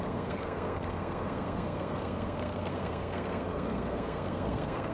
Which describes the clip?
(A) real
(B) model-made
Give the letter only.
B